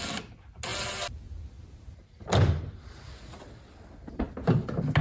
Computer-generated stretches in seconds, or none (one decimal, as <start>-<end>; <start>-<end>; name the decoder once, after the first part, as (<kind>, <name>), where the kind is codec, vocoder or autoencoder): none